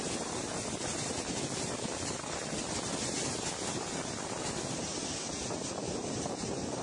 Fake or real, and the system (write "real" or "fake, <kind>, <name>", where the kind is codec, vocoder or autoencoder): real